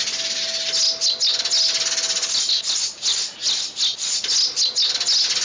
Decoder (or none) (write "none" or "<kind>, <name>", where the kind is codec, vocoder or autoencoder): none